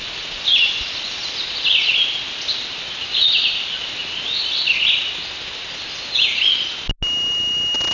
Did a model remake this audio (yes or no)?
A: no